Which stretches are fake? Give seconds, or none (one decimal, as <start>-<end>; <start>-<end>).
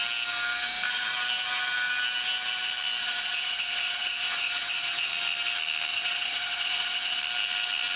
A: 3.0-5.1; 5.9-7.2